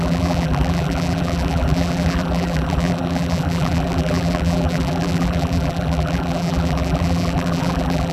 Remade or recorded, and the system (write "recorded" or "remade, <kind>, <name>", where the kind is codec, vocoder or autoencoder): remade, vocoder, BigVGAN v2